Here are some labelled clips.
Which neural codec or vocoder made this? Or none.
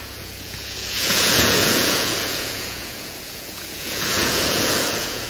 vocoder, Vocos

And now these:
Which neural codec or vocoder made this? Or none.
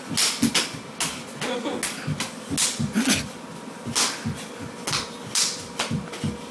none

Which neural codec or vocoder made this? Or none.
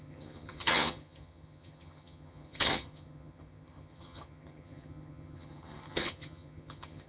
vocoder, HiFi-GAN